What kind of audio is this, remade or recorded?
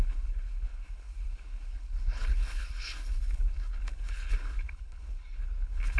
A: remade